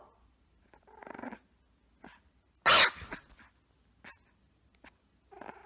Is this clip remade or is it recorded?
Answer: recorded